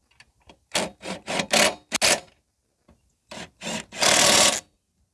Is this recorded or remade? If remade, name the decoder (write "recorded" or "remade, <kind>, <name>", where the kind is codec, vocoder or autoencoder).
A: recorded